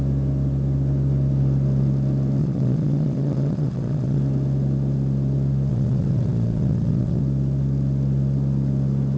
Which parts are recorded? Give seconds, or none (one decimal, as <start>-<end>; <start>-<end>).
0.0-2.4; 4.2-5.7; 7.2-9.2